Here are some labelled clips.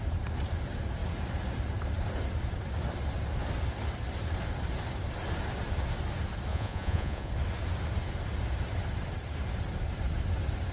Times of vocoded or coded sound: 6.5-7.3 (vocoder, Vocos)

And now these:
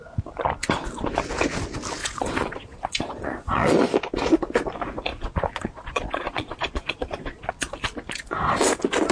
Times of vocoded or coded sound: 2.0-3.8 (vocoder, Vocos); 5.1-7.5

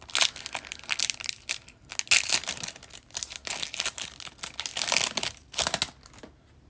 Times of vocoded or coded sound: none

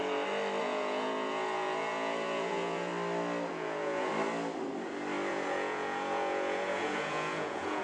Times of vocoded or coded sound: 0.6-2.9 (vocoder, Vocos); 3.5-4.1; 5.3-7.8